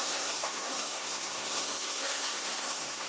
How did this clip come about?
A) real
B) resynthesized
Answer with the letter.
B